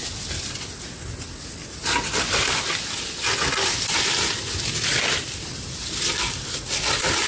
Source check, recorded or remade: recorded